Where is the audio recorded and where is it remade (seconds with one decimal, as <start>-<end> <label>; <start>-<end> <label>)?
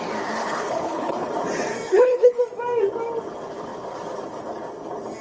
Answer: 0.0-0.4 recorded; 0.4-1.3 remade; 1.3-1.9 recorded; 1.9-2.4 remade; 2.4-5.2 recorded